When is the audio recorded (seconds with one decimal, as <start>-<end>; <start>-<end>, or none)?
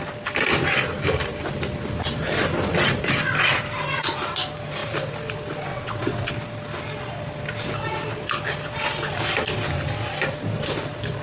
0.0-5.7; 6.3-11.2